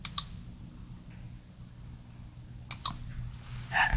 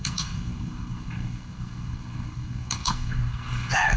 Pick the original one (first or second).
first